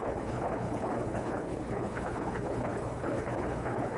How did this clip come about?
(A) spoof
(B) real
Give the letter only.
A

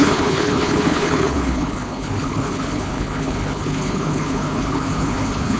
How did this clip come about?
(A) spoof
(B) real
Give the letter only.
A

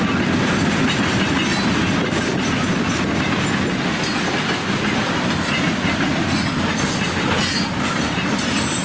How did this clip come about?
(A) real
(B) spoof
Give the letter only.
A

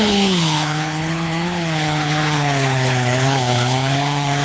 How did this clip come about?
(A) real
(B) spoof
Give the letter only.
B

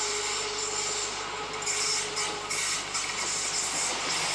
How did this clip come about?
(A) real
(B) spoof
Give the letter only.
A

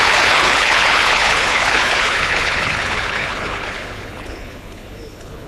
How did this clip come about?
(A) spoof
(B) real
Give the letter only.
A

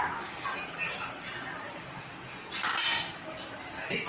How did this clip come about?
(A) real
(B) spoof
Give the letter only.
A